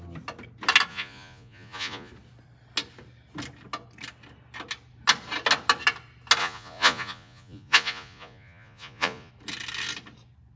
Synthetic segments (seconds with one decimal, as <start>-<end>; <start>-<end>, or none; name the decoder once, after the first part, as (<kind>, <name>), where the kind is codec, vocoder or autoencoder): 0.9-2.1 (vocoder, Vocos); 6.4-9.3